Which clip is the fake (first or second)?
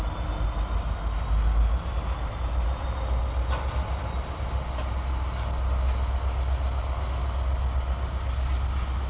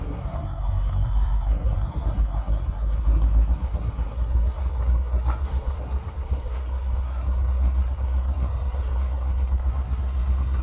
second